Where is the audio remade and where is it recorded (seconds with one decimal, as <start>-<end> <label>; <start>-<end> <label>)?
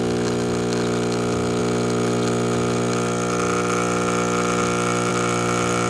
0.0-5.9 recorded